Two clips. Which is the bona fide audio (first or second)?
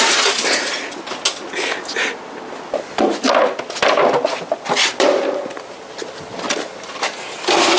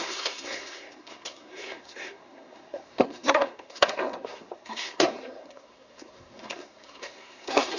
first